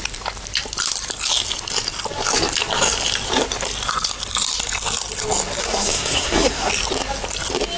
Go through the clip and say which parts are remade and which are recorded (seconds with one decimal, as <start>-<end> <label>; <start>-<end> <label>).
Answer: 0.0-5.6 recorded; 5.6-6.7 remade; 6.7-7.8 recorded